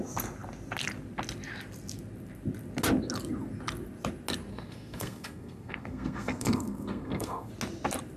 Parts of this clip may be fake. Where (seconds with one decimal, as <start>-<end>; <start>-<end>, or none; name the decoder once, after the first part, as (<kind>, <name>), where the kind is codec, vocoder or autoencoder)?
4.5-7.5 (codec, SNAC)